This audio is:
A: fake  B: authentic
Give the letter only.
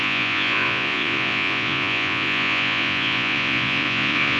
A